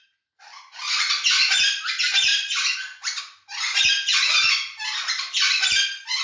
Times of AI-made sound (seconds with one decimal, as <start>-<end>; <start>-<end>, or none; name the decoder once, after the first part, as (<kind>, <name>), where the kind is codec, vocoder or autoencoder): none